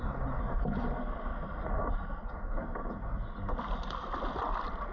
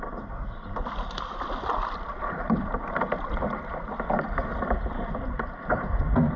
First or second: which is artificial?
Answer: second